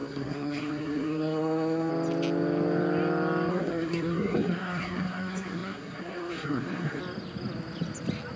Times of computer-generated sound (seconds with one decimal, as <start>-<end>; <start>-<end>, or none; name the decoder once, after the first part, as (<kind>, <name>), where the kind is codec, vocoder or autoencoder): 0.0-1.9 (codec, SNAC); 3.5-7.0